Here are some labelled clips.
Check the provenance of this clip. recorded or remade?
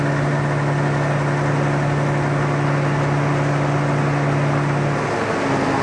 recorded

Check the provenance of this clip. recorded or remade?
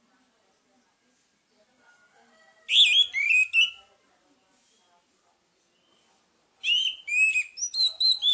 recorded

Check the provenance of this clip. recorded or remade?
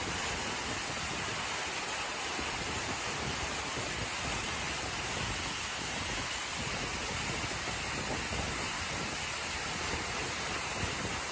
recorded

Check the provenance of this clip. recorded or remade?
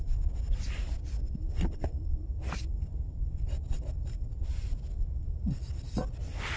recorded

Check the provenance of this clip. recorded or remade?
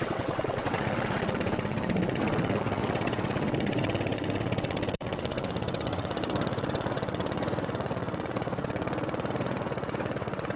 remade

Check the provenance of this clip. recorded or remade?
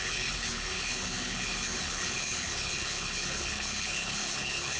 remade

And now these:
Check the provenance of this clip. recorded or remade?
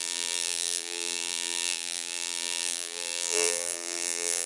remade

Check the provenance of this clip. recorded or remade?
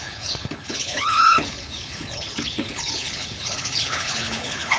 remade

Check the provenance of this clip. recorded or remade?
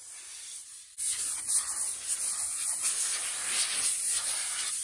recorded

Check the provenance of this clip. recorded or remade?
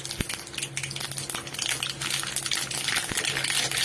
recorded